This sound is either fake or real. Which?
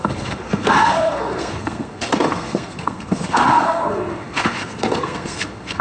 fake